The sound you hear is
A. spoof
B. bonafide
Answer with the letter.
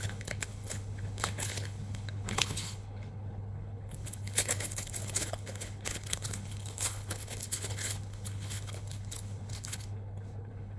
A